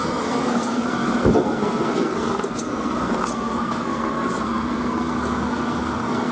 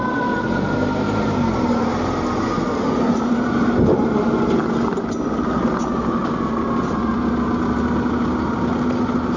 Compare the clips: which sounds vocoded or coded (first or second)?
first